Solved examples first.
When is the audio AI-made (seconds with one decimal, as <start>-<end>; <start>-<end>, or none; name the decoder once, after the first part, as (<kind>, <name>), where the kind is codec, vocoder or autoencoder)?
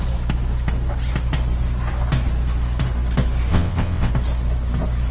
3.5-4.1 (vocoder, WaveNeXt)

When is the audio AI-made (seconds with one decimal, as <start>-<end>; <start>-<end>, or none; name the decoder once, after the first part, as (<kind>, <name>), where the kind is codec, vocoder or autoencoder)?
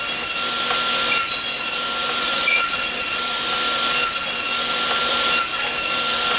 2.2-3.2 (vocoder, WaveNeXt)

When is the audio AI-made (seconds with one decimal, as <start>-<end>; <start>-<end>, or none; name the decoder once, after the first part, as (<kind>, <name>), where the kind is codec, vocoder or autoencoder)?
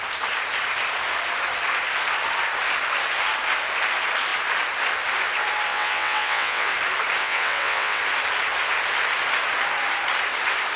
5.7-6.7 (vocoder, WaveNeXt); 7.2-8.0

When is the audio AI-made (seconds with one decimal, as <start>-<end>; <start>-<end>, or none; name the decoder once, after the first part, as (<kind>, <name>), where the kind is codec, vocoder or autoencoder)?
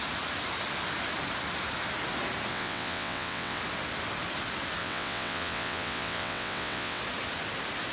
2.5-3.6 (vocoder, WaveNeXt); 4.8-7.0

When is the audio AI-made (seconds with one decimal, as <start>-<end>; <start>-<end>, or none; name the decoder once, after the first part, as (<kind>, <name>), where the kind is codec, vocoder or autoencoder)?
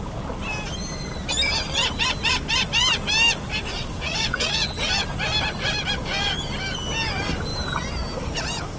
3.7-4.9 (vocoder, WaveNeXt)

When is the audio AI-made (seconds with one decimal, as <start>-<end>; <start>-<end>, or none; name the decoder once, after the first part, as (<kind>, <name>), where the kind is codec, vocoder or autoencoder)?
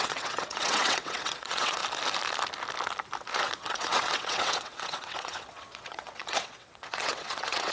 0.0-1.8 (vocoder, WaveNeXt); 3.4-7.7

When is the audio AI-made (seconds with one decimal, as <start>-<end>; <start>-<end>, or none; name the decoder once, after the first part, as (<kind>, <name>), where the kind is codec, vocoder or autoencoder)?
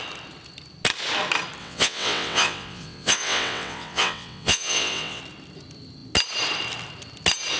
1.6-5.2 (vocoder, WaveNeXt)